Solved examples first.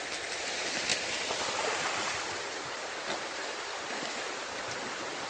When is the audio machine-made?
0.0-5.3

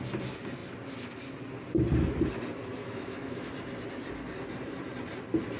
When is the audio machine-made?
2.8-3.5

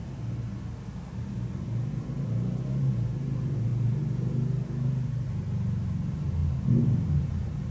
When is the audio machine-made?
none

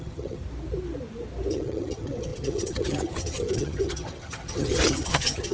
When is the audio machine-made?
0.0-0.4; 1.5-5.5

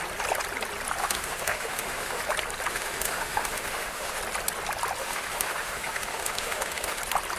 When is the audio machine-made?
1.0-2.2; 2.7-4.2; 5.0-7.0